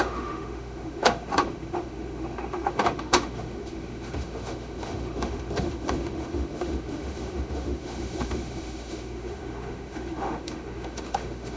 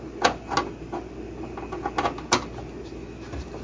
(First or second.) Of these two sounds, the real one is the second